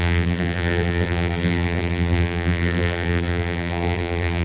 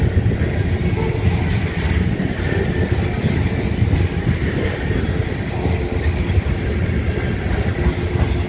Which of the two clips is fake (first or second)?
first